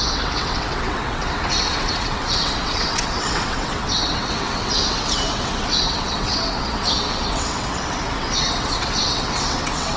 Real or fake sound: fake